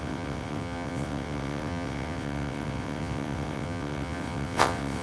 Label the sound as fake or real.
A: fake